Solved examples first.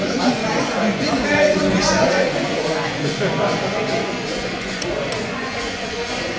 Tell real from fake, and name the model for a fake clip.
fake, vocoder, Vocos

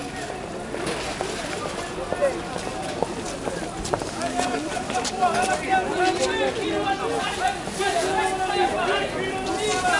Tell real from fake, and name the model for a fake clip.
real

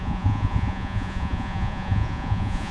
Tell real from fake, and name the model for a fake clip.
fake, vocoder, Vocos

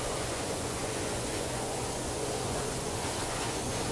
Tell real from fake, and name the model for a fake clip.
fake, vocoder, Vocos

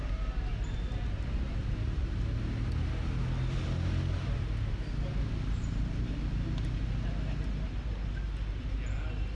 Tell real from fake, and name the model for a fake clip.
real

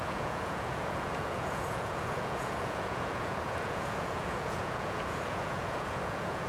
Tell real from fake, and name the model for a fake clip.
fake, vocoder, Vocos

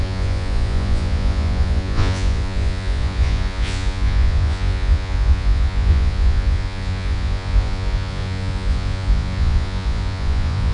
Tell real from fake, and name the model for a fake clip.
fake, vocoder, Vocos